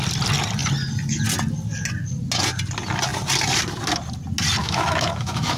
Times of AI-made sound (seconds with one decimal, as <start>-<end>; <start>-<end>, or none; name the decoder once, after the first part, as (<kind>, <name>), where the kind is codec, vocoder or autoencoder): 4.6-5.6 (autoencoder, DAC-VAE)